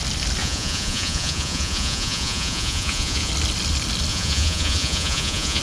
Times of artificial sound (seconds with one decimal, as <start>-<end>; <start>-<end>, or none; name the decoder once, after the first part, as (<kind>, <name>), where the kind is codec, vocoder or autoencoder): 0.4-3.3 (vocoder, Vocos); 4.1-5.6